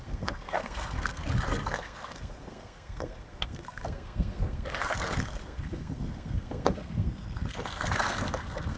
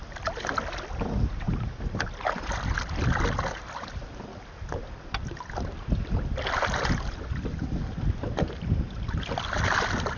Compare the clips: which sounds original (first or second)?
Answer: second